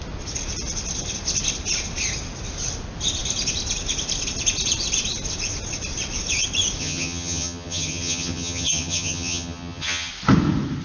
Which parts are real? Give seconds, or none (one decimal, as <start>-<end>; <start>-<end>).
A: 0.0-6.8; 10.1-10.8